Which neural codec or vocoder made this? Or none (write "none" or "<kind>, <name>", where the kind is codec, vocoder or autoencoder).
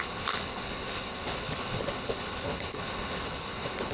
codec, HILCodec